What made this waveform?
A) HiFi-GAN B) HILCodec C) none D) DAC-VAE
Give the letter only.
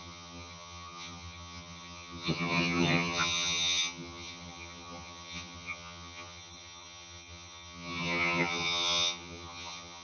A